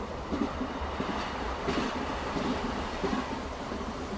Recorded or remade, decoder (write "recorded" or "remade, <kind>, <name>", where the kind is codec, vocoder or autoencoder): recorded